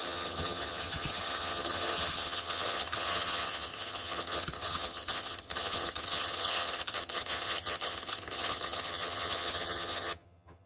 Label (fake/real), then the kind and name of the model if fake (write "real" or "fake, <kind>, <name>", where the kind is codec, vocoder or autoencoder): fake, vocoder, HiFi-GAN